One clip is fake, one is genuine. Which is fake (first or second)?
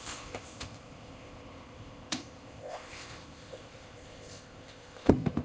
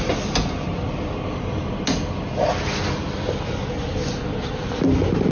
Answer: first